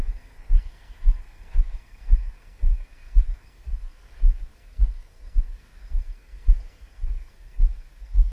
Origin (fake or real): fake